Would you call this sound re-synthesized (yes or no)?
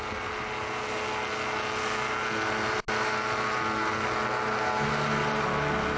no